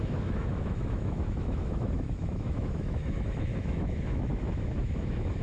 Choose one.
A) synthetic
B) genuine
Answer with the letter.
A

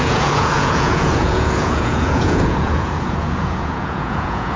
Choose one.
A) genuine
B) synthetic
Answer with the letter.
B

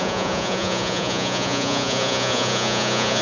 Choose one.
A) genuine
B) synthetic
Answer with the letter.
B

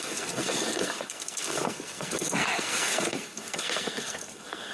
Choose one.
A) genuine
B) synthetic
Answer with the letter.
B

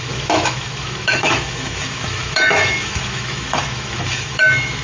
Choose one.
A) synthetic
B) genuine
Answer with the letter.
A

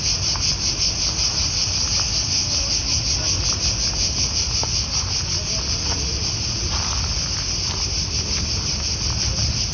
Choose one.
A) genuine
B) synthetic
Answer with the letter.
A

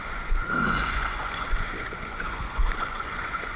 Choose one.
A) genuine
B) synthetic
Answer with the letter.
B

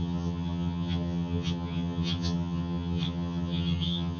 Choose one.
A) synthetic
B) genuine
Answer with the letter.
A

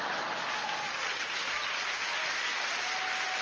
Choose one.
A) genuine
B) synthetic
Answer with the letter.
A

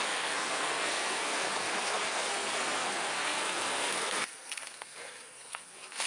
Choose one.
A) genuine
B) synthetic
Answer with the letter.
B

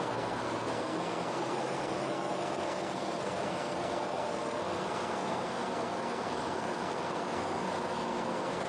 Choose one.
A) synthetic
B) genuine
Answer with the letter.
A